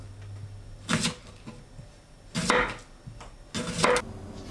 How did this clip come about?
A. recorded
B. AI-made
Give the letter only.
A